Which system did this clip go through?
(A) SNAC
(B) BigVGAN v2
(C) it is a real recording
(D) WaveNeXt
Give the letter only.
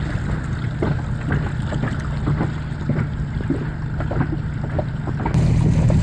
C